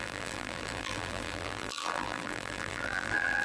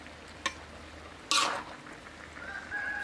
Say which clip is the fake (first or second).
first